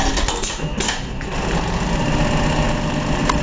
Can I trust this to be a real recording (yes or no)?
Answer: yes